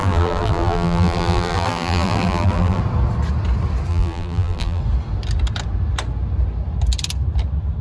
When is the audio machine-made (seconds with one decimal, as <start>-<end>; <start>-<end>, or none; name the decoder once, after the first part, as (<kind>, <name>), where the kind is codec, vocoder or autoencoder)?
0.0-2.8 (vocoder, BigVGAN v2); 3.9-4.8